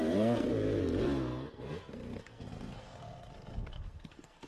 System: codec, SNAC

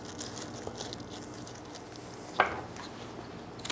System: none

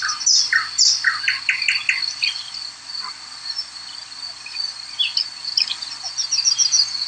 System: none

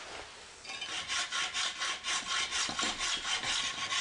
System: none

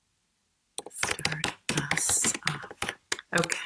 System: none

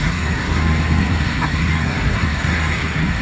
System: codec, SNAC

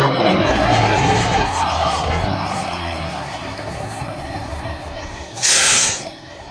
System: codec, SNAC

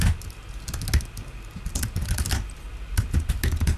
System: none